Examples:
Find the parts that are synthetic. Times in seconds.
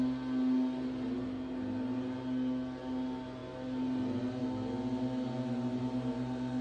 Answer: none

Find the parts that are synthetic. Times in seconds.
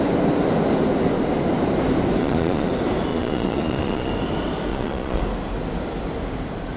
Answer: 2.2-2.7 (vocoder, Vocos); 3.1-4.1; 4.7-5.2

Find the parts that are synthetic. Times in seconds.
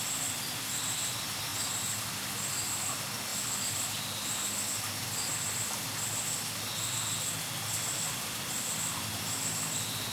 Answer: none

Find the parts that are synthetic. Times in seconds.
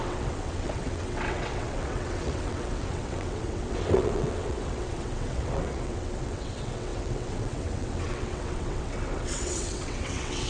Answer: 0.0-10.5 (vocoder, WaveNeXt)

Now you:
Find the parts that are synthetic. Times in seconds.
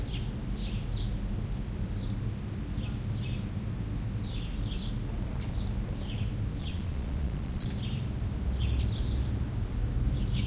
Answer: 6.6-7.7 (vocoder, Vocos)